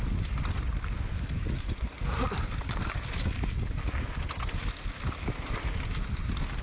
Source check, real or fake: real